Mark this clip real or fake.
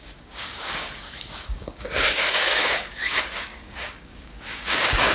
fake